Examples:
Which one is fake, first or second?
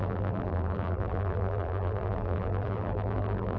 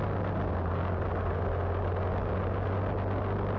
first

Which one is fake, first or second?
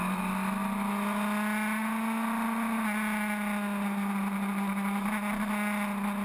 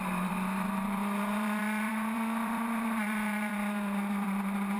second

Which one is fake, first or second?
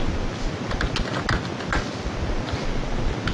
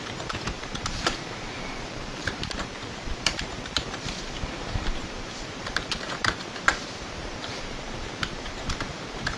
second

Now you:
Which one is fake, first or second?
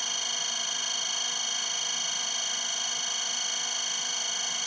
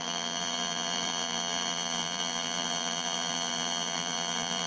second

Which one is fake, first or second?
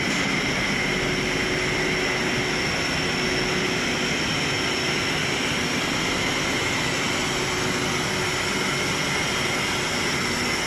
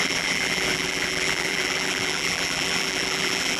second